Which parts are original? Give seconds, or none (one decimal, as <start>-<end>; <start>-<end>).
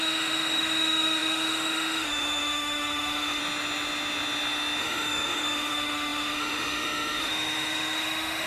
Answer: 3.4-4.8